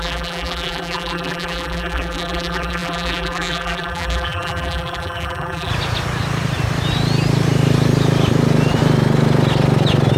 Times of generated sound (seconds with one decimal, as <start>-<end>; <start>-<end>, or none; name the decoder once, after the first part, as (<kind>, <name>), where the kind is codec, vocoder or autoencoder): 0.0-5.7 (vocoder, BigVGAN v2)